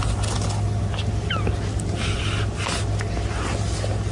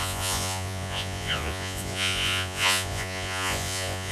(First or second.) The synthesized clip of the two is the second